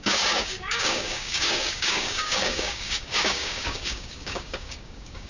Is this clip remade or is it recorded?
remade